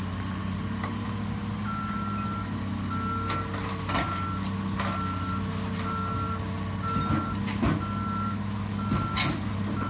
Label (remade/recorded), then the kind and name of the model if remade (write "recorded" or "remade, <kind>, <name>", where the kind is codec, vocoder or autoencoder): recorded